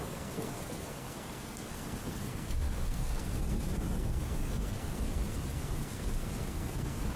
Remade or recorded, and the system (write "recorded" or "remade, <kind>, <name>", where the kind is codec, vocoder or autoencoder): remade, codec, SNAC